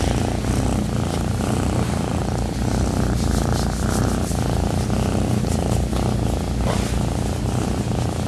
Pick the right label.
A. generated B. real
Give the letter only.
B